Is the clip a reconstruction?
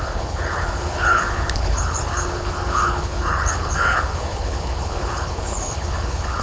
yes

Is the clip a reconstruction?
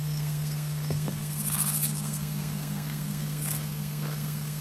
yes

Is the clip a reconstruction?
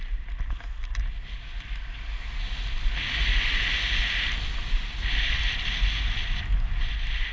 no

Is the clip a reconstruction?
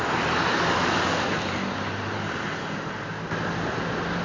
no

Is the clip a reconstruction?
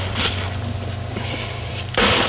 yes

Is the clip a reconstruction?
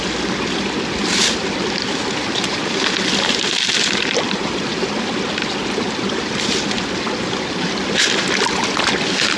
no